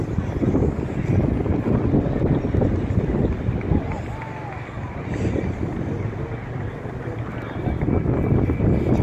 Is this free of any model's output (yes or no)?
yes